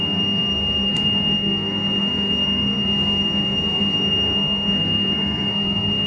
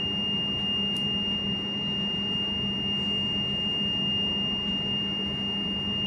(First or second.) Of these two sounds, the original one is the second